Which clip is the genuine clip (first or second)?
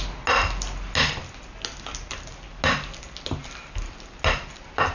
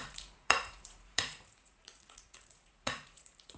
first